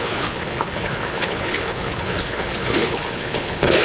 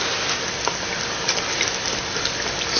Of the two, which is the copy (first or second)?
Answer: first